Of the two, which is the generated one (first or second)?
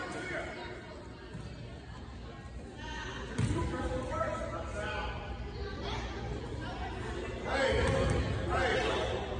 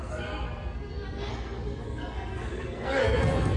second